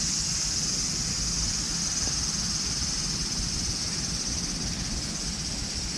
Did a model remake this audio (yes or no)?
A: no